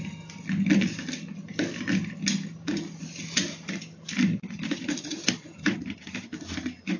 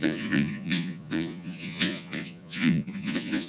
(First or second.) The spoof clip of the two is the second